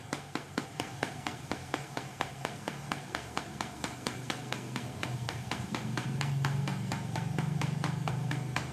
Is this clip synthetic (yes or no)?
yes